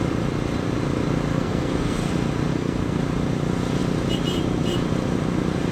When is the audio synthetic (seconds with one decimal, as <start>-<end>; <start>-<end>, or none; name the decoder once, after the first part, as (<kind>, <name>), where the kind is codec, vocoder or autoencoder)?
1.3-2.1 (codec, SNAC); 2.5-3.0